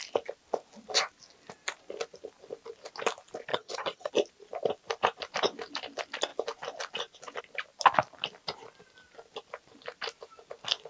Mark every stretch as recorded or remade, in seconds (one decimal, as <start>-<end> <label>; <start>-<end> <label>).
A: 0.0-3.5 recorded; 3.5-4.1 remade; 4.1-10.9 recorded